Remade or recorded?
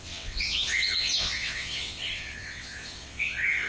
remade